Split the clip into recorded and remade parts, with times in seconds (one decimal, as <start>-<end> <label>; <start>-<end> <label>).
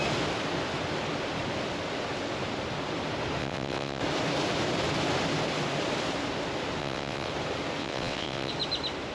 0.0-3.4 recorded; 3.4-4.0 remade; 4.0-6.8 recorded; 6.8-7.3 remade; 7.3-7.8 recorded; 7.8-8.5 remade; 8.5-9.1 recorded